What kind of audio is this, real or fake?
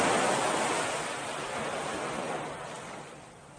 real